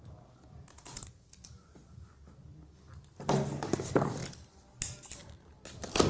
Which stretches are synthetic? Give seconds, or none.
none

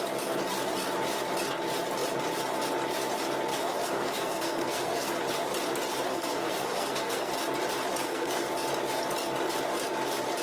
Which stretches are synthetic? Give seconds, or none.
3.5-5.2 (codec, SNAC); 6.1-7.3; 8.0-8.5

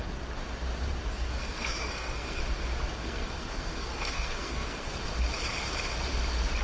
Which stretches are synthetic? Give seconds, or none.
1.1-2.4 (codec, SNAC); 3.0-4.9

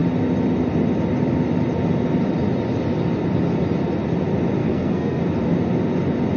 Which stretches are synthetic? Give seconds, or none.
4.6-5.2 (codec, SNAC)

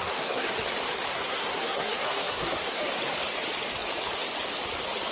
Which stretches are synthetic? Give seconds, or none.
0.0-0.5 (codec, SNAC); 1.1-2.8